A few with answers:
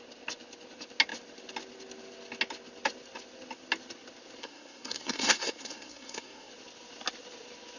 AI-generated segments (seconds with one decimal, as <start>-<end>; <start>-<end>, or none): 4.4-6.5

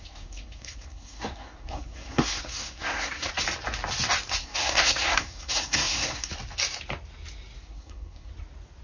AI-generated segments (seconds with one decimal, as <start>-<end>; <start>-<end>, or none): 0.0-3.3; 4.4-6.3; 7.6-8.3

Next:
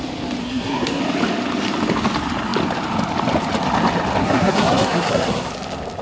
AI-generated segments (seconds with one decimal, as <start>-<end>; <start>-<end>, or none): 0.4-1.0; 4.2-5.5